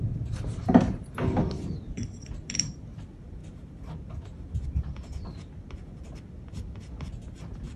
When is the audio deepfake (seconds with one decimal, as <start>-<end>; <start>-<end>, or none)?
1.4-3.0